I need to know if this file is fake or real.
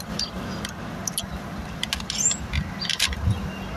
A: real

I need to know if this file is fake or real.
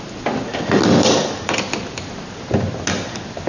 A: real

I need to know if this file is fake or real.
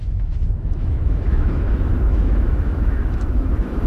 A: fake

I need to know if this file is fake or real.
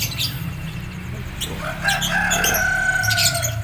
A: real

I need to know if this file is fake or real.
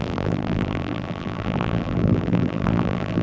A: fake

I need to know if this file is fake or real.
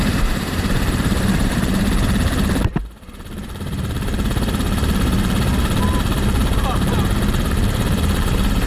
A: fake